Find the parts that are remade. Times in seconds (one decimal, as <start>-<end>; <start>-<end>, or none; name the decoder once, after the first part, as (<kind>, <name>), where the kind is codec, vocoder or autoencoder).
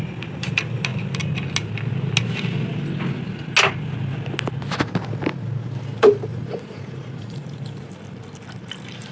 6.3-7.6 (vocoder, Vocos)